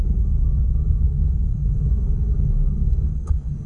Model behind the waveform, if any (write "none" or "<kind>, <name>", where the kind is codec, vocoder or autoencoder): codec, SNAC